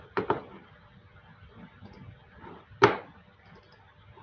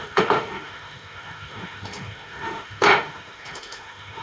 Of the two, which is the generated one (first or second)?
second